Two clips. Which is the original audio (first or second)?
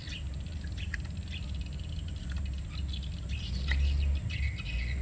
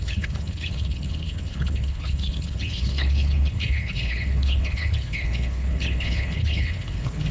first